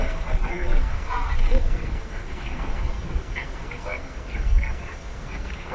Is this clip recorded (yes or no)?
no